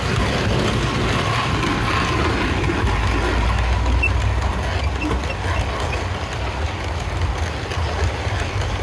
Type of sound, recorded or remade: recorded